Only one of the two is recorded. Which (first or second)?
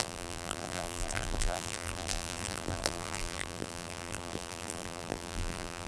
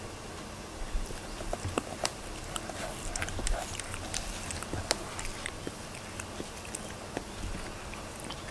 second